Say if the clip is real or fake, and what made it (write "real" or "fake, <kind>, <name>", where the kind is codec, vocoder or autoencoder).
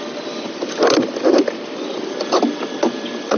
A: fake, vocoder, BigVGAN v2